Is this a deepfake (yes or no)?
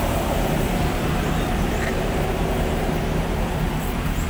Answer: yes